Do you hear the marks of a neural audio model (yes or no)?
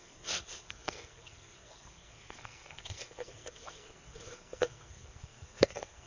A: yes